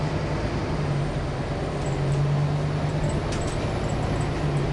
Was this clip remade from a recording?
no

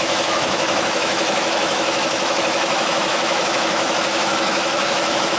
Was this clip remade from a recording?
yes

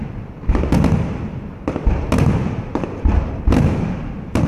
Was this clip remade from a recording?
no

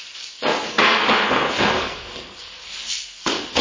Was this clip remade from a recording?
yes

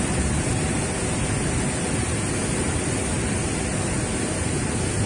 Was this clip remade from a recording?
no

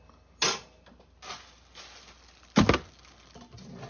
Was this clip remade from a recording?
no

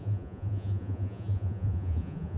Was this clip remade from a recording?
yes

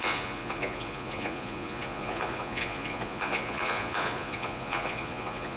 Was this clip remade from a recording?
yes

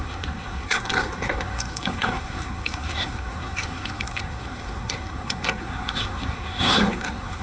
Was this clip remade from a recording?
yes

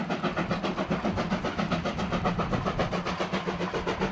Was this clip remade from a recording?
no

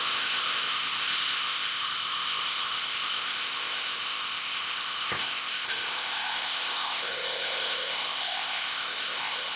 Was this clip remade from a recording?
yes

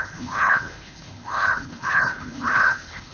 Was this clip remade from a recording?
yes